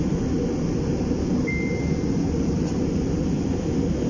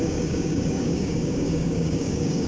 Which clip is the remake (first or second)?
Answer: second